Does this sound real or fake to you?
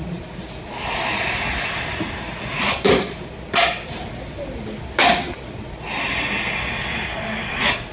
real